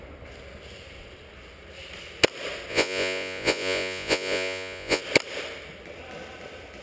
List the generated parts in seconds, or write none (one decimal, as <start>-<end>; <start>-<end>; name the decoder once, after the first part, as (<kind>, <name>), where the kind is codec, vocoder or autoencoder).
2.7-5.0 (vocoder, Vocos)